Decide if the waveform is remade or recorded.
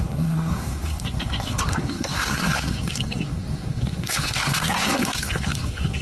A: remade